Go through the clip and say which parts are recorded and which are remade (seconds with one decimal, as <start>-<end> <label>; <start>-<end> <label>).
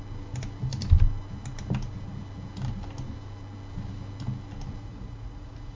0.0-4.8 recorded; 4.8-5.8 remade